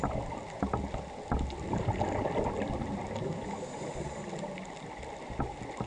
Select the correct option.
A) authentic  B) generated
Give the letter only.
A